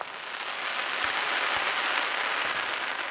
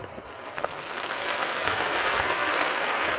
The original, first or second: first